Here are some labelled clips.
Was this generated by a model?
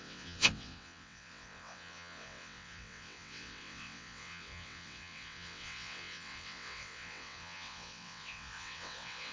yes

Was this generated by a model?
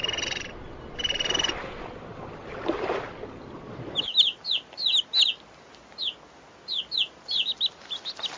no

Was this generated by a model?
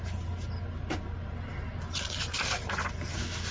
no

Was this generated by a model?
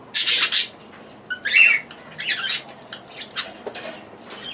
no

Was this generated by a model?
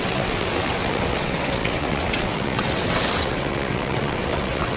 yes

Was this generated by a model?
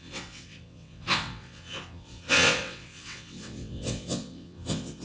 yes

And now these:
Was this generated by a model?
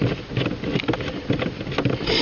no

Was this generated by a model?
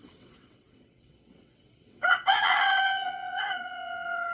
yes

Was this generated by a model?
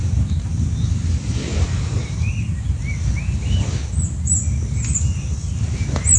no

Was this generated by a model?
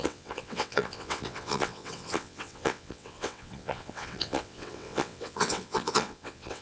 yes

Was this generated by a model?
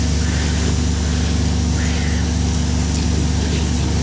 no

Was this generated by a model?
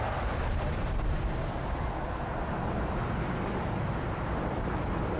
no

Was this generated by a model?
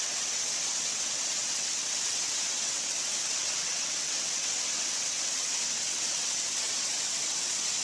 yes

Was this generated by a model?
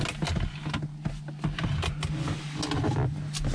no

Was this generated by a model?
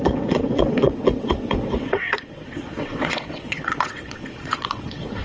yes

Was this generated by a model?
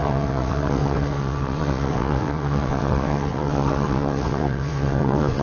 yes